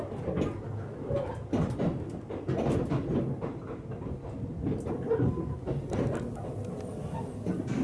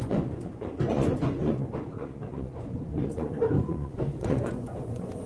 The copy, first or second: second